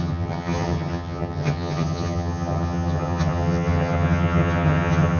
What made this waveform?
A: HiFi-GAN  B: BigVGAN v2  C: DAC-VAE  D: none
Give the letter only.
A